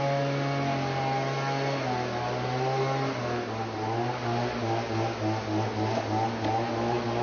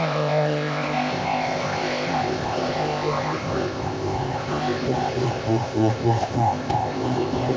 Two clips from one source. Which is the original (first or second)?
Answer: first